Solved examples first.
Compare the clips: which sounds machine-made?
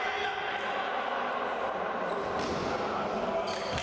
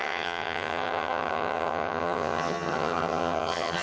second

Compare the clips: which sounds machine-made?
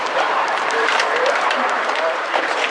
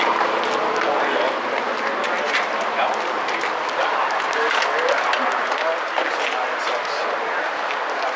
first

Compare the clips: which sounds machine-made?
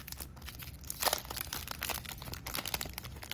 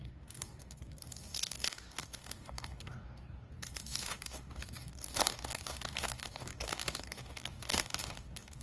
second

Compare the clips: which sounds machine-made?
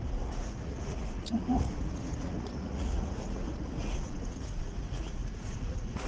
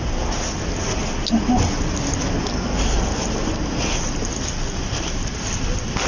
first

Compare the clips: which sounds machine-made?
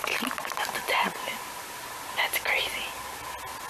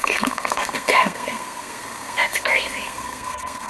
second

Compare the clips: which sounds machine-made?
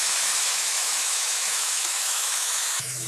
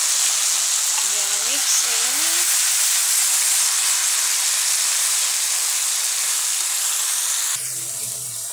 first